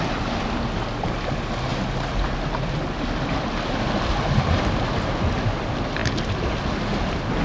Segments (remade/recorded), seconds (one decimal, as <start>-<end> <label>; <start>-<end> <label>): 0.0-7.4 recorded